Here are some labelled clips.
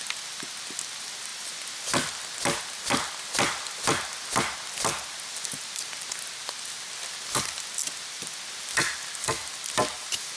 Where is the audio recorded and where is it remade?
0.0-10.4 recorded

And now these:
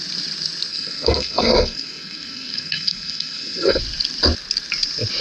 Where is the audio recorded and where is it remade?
0.0-0.7 recorded; 0.7-3.8 remade; 3.8-5.2 recorded

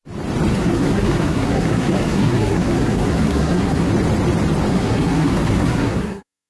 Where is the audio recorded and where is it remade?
0.0-0.5 recorded; 0.5-3.9 remade; 3.9-4.7 recorded; 4.7-6.5 remade

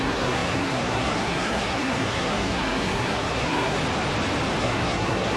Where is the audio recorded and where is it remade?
0.0-3.8 remade; 3.8-4.6 recorded; 4.6-5.4 remade

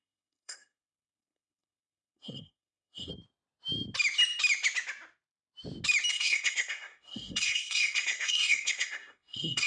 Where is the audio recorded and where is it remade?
0.0-3.1 remade; 3.1-6.1 recorded; 6.1-9.7 remade

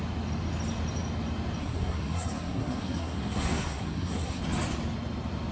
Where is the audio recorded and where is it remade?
0.0-1.6 recorded; 1.6-4.4 remade; 4.4-5.5 recorded

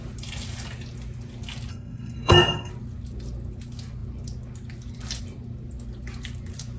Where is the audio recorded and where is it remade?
0.0-1.7 recorded; 1.7-2.7 remade; 2.7-6.8 recorded

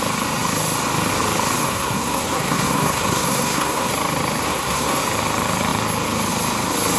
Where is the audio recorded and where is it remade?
0.0-1.6 recorded; 1.6-3.9 remade; 3.9-4.4 recorded; 4.4-5.0 remade; 5.0-7.0 recorded